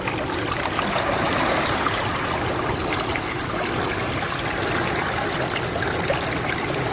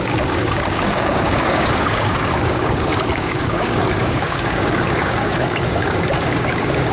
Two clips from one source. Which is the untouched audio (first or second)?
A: first